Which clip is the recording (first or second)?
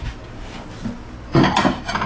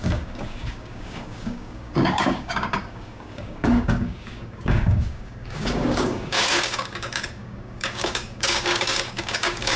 first